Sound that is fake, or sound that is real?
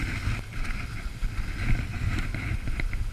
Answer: real